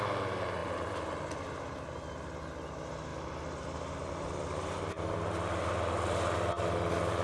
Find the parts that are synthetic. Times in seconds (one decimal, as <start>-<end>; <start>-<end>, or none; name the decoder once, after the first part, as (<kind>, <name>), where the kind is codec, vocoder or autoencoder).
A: none